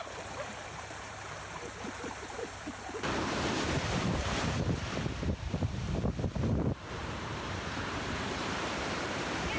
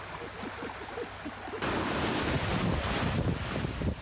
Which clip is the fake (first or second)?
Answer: first